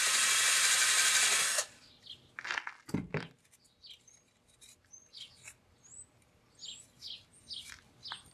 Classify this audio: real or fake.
real